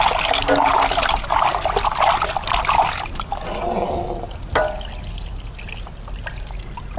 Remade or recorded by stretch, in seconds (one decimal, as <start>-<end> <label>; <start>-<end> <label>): 0.0-7.0 recorded